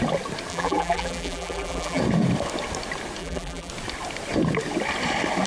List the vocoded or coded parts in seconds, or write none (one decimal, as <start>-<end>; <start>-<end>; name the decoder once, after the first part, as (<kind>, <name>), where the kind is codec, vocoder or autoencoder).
0.5-2.0 (vocoder, BigVGAN v2); 3.2-3.7